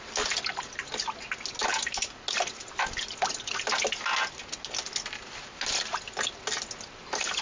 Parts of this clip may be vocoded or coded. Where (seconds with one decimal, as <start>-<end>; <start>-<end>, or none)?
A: none